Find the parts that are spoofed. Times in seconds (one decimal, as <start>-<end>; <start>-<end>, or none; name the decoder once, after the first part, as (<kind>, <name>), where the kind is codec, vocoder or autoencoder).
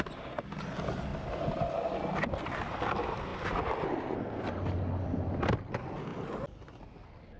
1.1-1.7 (vocoder, BigVGAN v2); 6.1-6.9